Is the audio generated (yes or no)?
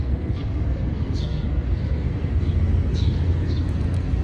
yes